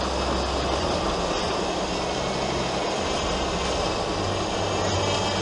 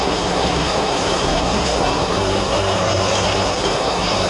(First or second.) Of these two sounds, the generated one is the second